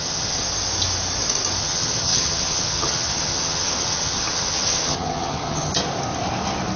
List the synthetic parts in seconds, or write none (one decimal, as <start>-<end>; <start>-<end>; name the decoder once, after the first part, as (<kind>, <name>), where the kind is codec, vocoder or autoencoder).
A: 0.0-0.4 (vocoder, HiFi-GAN); 1.6-5.7